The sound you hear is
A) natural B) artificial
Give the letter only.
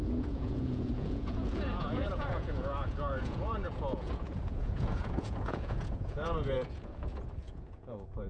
B